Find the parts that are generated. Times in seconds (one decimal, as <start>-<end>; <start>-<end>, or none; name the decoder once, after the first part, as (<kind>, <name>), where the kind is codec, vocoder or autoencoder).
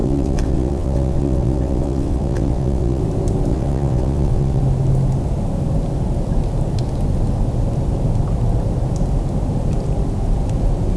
0.0-3.0 (vocoder, WaveNeXt); 3.5-4.6